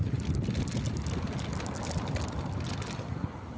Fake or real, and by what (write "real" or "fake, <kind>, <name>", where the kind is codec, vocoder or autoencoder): real